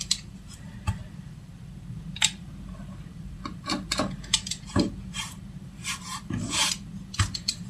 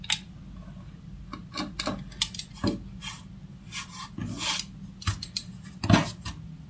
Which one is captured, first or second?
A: second